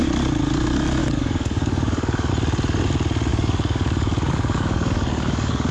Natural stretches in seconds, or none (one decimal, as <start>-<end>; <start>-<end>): 0.0-1.0; 2.3-3.3